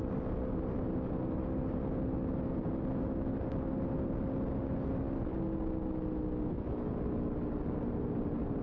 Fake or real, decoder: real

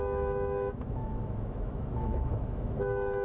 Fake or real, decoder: fake, autoencoder, DAC-VAE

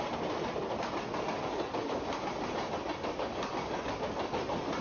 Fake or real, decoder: real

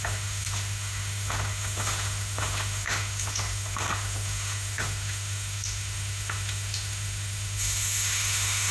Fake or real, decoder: fake, autoencoder, DAC-VAE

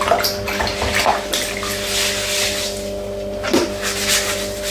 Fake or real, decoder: real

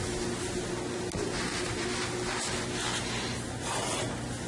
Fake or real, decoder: real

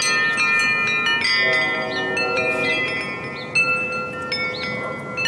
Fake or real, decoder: real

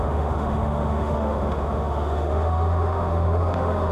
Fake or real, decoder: fake, autoencoder, DAC-VAE